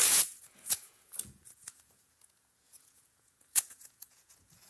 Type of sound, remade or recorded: remade